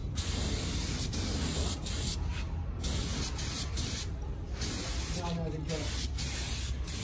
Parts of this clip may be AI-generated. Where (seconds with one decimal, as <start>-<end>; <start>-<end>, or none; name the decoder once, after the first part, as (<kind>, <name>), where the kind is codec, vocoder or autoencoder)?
none